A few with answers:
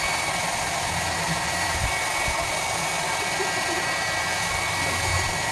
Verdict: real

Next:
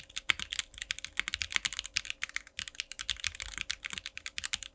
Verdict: real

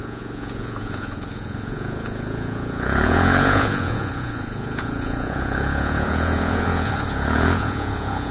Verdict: fake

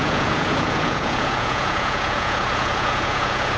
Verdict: fake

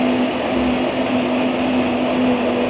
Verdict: real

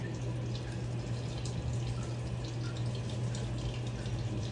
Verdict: real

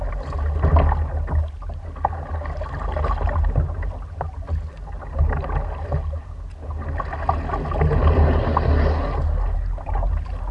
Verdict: real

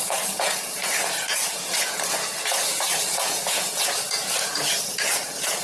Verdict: fake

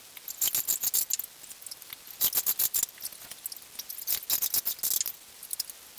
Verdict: real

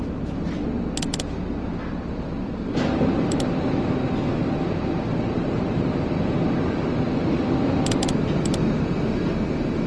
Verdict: real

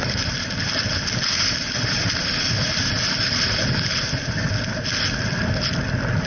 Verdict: real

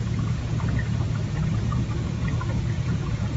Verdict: fake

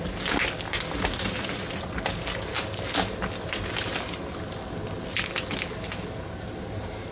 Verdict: real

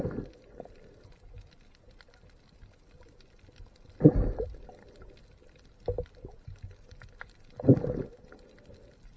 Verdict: real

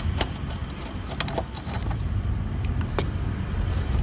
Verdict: real